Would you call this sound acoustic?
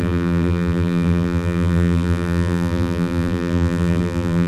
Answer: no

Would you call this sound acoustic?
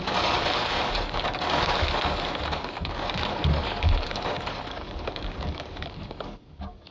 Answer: no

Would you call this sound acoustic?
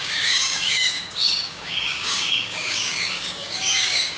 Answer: no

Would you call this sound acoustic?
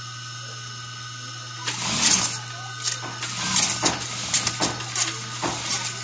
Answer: yes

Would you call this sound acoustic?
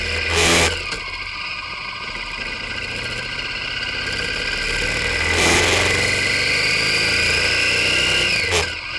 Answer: yes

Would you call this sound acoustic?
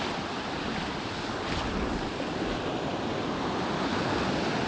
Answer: yes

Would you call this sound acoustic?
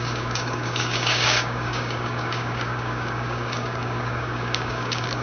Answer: no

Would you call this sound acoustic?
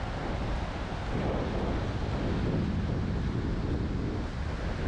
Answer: yes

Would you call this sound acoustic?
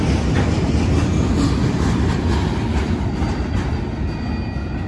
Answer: yes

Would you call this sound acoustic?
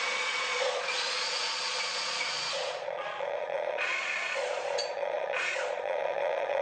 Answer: no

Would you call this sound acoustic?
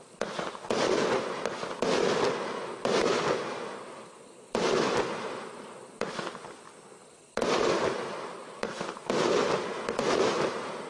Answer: yes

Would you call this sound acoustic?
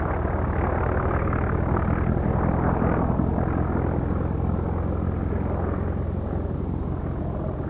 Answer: yes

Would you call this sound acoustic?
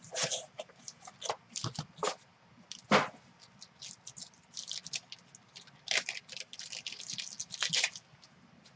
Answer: yes